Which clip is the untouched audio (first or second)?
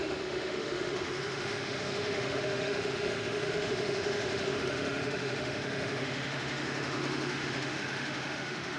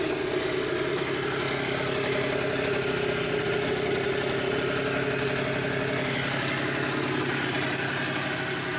second